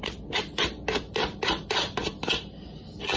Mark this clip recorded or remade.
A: recorded